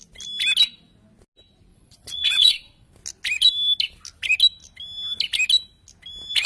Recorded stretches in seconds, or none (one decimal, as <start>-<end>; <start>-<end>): 0.0-1.7; 2.9-6.5